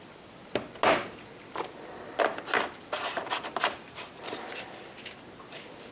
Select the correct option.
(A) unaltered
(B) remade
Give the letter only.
A